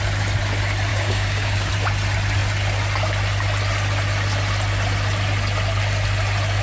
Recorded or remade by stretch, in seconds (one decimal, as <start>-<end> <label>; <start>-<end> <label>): 0.0-0.9 recorded; 0.9-1.7 remade; 1.7-6.6 recorded